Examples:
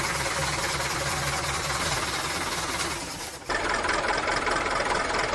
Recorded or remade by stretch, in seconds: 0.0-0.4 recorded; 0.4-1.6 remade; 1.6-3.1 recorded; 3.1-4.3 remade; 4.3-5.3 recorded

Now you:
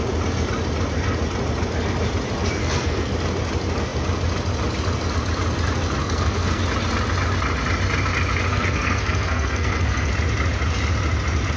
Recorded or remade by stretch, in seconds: 0.0-2.6 recorded; 2.6-3.1 remade; 3.1-6.0 recorded; 6.0-6.6 remade; 6.6-8.5 recorded; 8.5-10.1 remade; 10.1-11.6 recorded

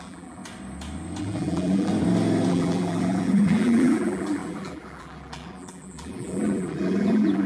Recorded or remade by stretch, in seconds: 0.0-0.4 remade; 0.4-1.2 recorded; 1.2-1.9 remade; 1.9-2.5 recorded; 2.5-7.5 remade

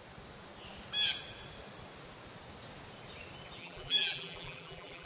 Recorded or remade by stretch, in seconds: 0.0-3.6 recorded; 3.6-5.1 remade

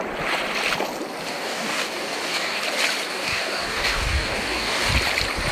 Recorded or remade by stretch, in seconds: 0.0-1.3 recorded; 1.3-2.6 remade; 2.6-3.1 recorded; 3.1-4.9 remade; 4.9-5.5 recorded

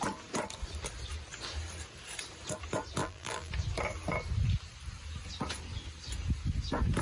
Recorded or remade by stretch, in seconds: 0.0-3.0 recorded; 3.0-3.5 remade; 3.5-7.0 recorded

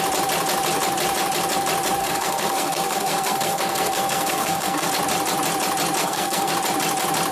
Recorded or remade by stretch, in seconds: 0.0-2.0 recorded; 2.0-4.9 remade; 4.9-6.0 recorded; 6.0-6.5 remade; 6.5-7.3 recorded

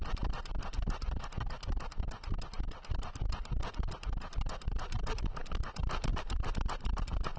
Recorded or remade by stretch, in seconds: 0.0-7.4 recorded